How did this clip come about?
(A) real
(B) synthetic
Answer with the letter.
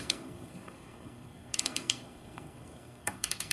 B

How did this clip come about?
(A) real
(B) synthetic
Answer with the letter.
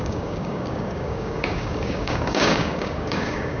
B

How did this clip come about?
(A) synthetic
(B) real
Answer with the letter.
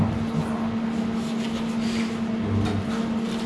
B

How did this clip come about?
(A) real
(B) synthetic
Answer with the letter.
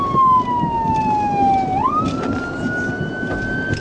A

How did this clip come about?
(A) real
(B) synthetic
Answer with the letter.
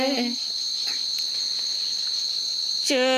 A